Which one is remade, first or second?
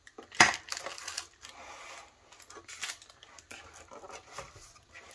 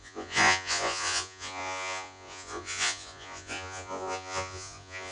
second